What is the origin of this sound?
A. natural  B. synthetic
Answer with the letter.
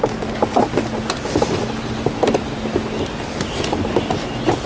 A